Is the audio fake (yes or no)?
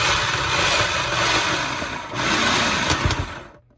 no